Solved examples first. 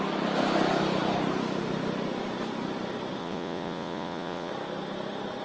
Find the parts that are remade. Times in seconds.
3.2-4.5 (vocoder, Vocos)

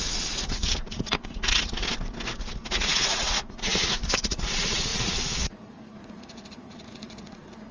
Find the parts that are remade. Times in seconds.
0.0-1.8 (vocoder, Vocos); 2.7-7.7